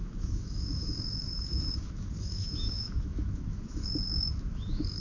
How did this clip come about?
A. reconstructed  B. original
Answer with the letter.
A